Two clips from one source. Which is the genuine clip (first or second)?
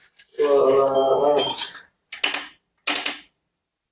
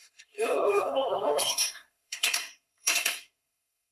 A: first